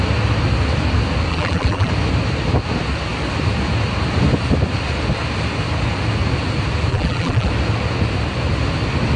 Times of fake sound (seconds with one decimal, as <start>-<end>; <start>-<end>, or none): 1.3-1.9; 6.9-7.5